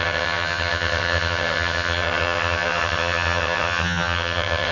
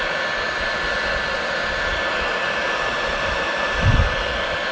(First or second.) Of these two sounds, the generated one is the first